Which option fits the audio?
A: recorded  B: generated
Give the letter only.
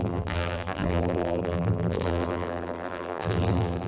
B